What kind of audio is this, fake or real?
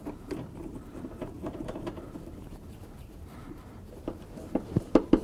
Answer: fake